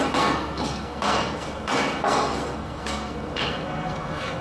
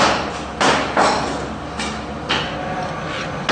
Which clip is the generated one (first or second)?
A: first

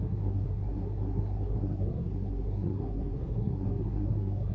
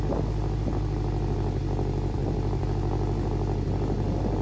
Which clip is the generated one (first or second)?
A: first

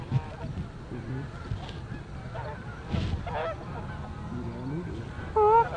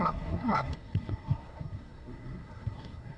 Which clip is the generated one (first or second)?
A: second